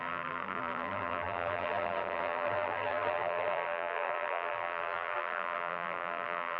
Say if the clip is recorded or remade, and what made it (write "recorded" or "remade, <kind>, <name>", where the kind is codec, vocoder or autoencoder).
remade, vocoder, BigVGAN v2